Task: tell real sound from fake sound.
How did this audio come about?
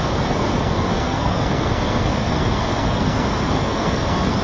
fake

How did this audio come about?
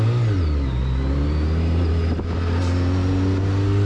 real